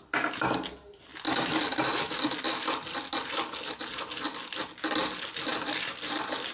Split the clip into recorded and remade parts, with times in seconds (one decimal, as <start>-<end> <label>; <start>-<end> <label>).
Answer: 0.0-6.5 recorded